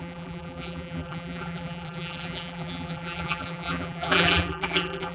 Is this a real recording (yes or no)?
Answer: no